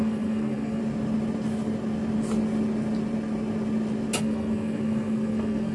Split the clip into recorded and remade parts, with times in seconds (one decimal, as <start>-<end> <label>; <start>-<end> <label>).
0.0-0.8 remade; 0.8-4.2 recorded; 4.2-5.7 remade